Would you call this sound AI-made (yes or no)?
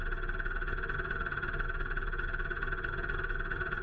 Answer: no